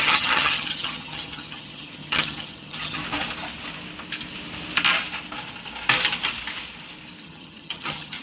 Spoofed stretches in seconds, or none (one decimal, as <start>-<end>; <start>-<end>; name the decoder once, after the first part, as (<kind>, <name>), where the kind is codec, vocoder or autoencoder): 0.0-3.0 (vocoder, HiFi-GAN); 7.2-8.2